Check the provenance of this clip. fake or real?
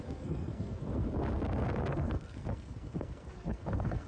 fake